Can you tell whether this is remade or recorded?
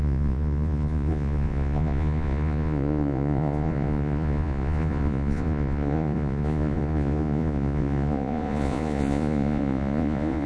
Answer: remade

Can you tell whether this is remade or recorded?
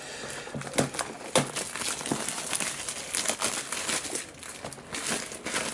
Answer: recorded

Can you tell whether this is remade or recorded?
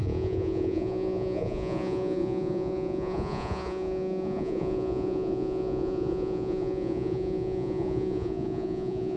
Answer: remade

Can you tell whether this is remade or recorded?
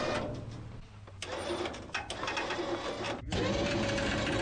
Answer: recorded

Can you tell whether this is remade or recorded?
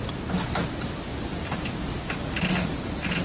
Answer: recorded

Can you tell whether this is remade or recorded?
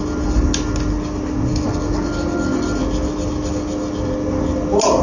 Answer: recorded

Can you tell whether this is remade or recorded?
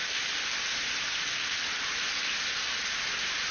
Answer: recorded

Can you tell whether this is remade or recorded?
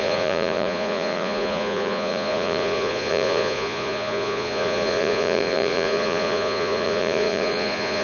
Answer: remade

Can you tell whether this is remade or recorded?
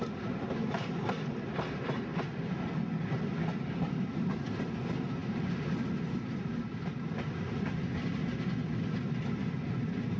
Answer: recorded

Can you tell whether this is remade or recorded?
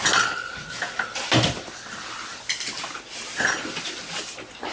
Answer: recorded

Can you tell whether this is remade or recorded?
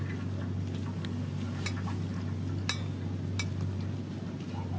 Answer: recorded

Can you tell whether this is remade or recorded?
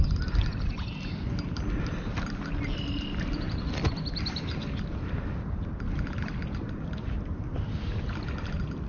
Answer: recorded